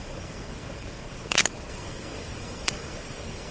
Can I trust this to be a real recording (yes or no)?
no